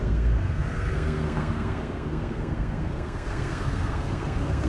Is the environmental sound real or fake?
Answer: fake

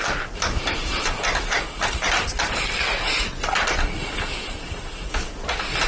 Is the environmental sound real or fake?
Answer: real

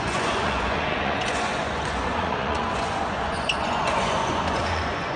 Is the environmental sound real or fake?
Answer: fake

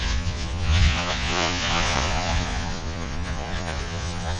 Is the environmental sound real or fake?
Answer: fake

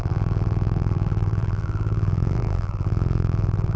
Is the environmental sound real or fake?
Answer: fake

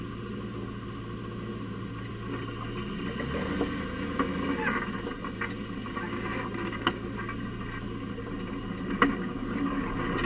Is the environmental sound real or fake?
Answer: real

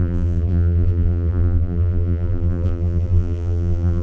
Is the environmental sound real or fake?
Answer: fake